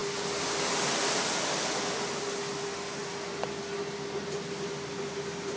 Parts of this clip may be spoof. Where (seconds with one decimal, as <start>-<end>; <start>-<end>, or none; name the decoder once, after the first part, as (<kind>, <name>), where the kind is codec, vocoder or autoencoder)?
none